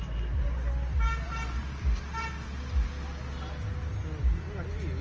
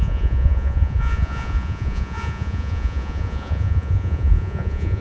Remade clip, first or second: second